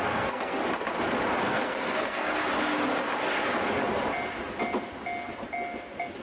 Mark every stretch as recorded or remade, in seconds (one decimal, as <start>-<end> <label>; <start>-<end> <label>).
0.0-0.6 remade; 0.6-1.4 recorded; 1.4-2.4 remade; 2.4-6.2 recorded